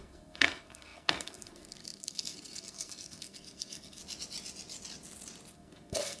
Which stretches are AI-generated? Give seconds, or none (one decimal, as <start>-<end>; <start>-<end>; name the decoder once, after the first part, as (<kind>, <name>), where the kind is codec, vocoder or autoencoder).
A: 0.0-4.0 (codec, SNAC); 5.5-6.2